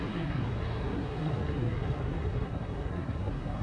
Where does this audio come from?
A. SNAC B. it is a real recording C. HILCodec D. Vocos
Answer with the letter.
A